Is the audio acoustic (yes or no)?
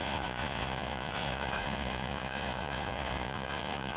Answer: no